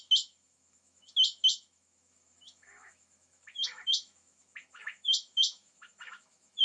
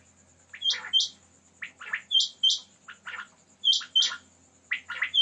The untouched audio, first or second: second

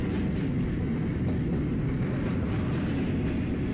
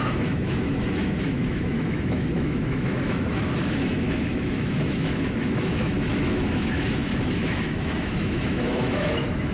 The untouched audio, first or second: first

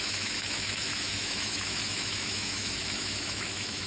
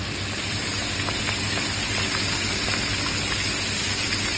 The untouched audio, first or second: second